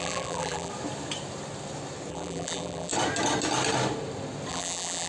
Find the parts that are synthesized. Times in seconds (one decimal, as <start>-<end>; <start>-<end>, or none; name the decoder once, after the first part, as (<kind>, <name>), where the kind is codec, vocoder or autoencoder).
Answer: 0.0-0.7 (vocoder, BigVGAN v2); 2.1-2.9; 4.5-5.1

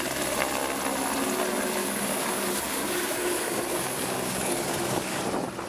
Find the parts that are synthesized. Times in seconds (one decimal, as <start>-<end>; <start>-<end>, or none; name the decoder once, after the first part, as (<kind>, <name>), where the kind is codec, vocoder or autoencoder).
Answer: 1.8-5.2 (codec, DAC)

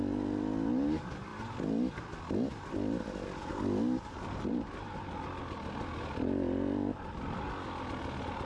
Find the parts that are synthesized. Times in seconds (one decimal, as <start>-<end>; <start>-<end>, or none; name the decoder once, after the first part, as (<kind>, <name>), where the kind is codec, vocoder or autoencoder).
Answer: none

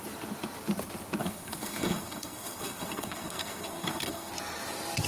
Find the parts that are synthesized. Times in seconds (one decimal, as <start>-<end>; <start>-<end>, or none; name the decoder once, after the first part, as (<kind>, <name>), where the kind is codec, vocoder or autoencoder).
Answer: 1.2-4.3 (codec, SNAC)